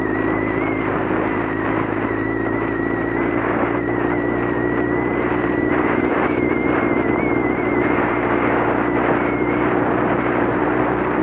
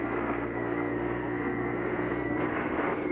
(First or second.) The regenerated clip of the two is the second